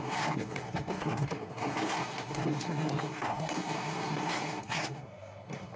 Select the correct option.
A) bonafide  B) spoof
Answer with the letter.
B